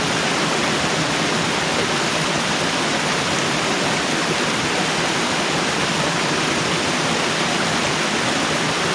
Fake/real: real